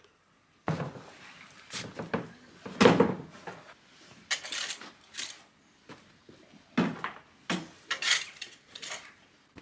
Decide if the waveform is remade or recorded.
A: recorded